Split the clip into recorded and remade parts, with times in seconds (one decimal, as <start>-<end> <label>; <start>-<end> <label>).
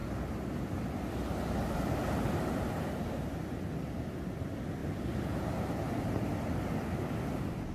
0.0-7.7 recorded